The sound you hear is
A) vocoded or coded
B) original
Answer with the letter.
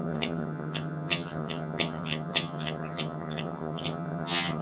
A